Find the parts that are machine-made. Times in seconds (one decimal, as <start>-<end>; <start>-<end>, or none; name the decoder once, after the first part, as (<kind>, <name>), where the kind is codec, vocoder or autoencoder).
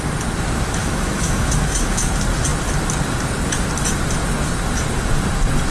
0.8-2.1 (autoencoder, DAC-VAE)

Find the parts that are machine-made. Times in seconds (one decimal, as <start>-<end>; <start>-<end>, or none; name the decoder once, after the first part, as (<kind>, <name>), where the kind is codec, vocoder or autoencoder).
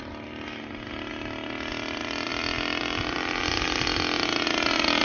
none